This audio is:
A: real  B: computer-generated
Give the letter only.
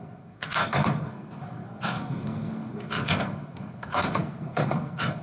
B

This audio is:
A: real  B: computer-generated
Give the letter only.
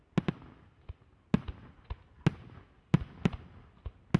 A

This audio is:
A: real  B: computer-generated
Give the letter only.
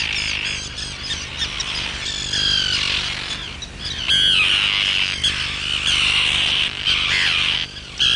A